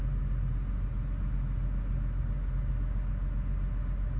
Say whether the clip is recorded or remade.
recorded